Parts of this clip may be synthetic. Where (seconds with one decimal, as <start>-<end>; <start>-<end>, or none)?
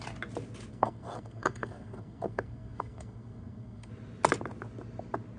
0.7-3.9